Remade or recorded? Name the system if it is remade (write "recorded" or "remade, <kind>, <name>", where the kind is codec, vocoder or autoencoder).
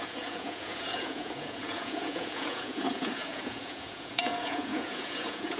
remade, vocoder, Vocos